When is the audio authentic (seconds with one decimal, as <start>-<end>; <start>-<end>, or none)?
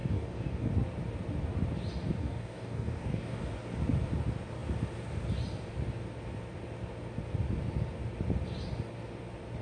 0.7-2.2; 3.5-9.6